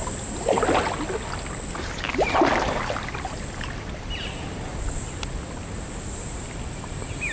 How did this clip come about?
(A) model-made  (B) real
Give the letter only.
B